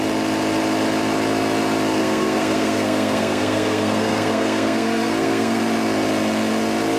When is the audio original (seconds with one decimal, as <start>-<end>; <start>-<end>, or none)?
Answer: 0.0-2.0; 5.6-7.0